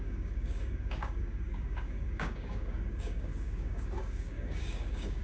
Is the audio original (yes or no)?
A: no